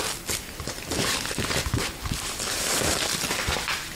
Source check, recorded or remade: remade